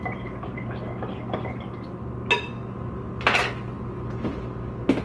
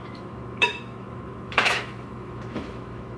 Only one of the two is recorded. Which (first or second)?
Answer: first